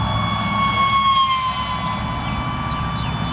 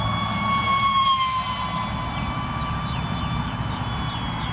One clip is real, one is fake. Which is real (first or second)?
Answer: first